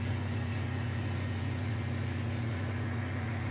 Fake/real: fake